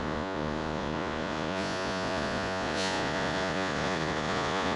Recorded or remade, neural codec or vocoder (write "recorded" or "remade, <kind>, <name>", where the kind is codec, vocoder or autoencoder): remade, vocoder, Vocos